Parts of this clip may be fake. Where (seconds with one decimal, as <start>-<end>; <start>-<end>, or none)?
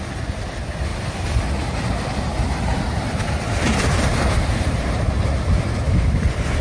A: 0.9-1.4; 2.7-5.5